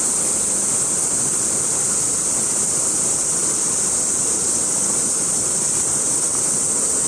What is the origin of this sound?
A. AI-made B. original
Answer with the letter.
B